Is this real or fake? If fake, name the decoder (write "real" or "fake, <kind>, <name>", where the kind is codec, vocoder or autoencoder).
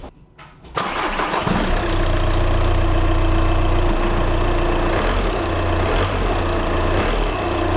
real